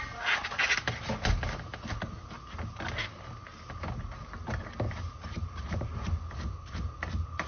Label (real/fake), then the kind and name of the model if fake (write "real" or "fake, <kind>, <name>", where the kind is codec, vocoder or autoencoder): real